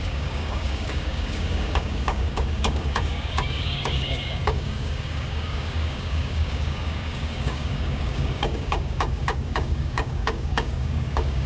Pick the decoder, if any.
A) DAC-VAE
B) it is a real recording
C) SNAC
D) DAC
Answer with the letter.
D